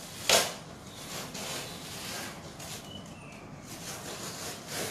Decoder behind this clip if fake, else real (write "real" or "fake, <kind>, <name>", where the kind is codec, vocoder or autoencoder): real